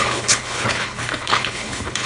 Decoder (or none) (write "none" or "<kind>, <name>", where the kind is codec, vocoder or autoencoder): codec, HILCodec